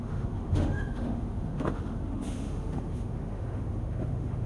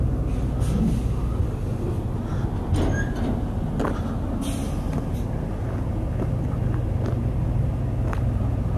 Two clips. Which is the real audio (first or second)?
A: second